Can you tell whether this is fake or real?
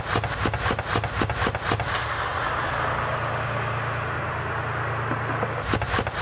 real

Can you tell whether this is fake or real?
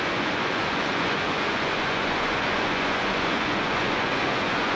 fake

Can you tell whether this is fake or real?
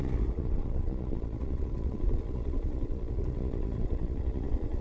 fake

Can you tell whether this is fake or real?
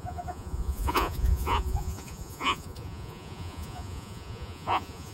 fake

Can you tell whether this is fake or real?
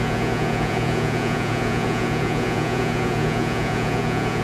fake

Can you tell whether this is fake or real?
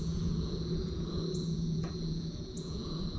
fake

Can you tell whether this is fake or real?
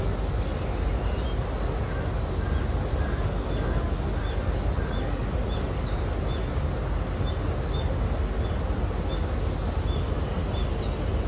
real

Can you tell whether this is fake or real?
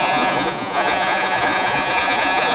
fake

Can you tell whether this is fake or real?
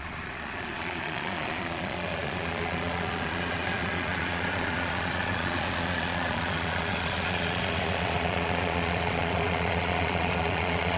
fake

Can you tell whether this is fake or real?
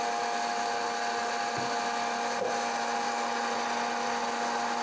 real